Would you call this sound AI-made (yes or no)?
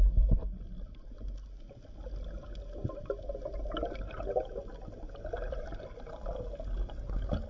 no